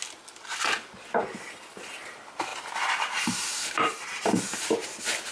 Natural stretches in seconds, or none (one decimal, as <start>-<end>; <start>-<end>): 0.0-5.3